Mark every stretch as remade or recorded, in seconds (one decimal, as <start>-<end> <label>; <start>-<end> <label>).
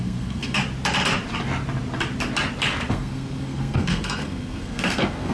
0.0-0.6 remade; 0.6-2.9 recorded; 2.9-5.3 remade